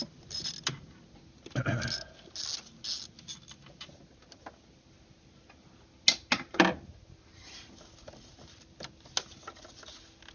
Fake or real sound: real